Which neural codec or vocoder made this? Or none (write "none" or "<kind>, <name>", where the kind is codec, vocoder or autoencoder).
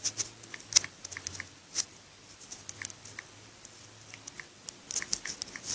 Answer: none